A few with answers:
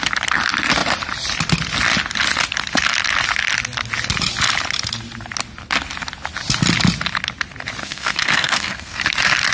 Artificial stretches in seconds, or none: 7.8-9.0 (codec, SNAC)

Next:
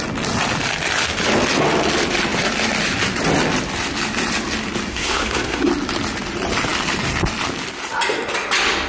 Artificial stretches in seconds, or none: 4.9-5.7 (codec, SNAC)

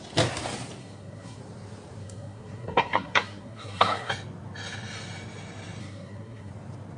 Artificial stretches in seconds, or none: 0.8-1.4 (codec, SNAC); 2.0-4.1; 5.8-6.5